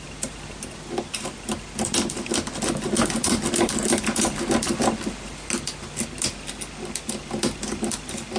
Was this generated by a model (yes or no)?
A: no